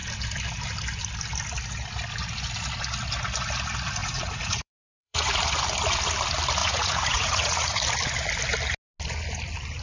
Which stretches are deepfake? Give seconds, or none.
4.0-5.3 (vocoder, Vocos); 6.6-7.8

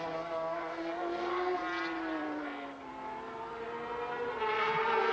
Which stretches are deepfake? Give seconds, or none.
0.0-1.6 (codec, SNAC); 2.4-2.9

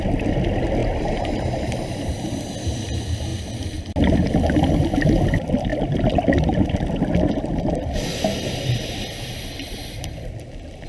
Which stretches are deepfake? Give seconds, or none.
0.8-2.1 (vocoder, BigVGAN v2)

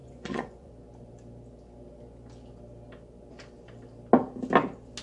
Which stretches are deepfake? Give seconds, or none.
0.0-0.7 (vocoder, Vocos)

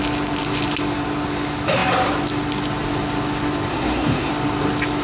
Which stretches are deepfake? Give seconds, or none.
3.7-4.3 (codec, SNAC)